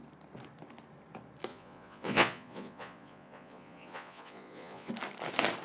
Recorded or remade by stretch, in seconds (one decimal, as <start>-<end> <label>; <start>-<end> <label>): 0.0-1.5 recorded; 1.5-4.9 remade; 4.9-5.6 recorded